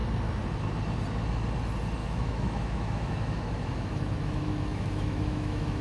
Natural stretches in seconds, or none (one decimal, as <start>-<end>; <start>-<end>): 0.0-2.0